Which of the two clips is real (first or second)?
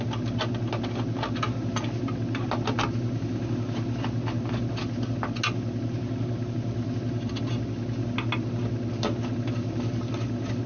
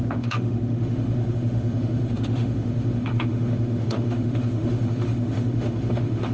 first